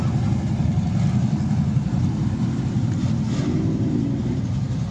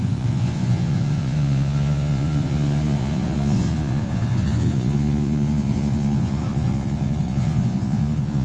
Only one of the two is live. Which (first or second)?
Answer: first